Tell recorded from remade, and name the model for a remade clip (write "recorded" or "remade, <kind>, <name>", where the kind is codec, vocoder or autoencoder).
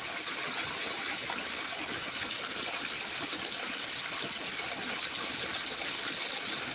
recorded